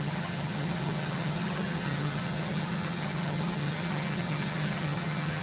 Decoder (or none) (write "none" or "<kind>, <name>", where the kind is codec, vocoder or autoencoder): vocoder, HiFi-GAN